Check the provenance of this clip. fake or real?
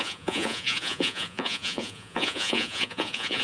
fake